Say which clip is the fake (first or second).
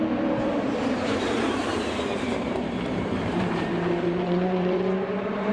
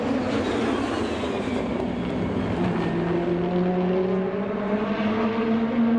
first